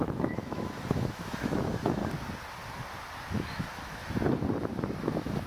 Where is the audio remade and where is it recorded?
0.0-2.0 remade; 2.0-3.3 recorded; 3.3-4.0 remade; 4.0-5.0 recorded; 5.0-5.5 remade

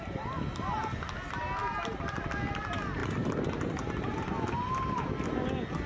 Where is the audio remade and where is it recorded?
0.0-5.9 recorded

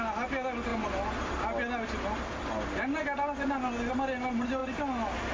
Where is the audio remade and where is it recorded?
0.0-5.3 recorded

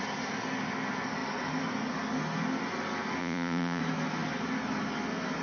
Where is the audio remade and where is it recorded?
0.0-3.2 recorded; 3.2-3.8 remade; 3.8-5.4 recorded

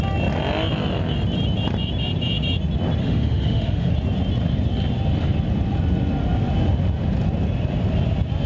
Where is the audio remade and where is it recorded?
0.0-3.0 recorded; 3.0-3.9 remade; 3.9-8.5 recorded

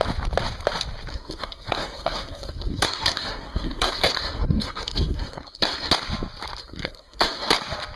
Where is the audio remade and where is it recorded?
0.0-1.1 recorded; 1.1-5.9 remade; 5.9-6.6 recorded; 6.6-7.5 remade; 7.5-8.0 recorded

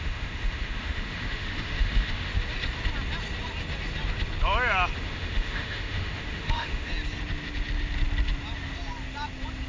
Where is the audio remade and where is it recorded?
0.0-2.3 remade; 2.3-5.0 recorded; 5.0-6.9 remade; 6.9-9.7 recorded